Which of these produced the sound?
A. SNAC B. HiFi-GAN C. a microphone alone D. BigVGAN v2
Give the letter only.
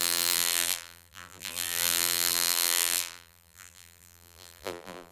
D